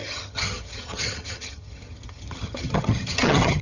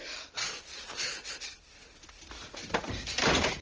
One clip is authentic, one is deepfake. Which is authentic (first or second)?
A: second